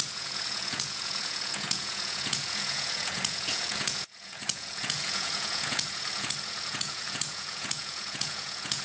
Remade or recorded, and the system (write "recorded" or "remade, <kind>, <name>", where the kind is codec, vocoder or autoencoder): remade, vocoder, Vocos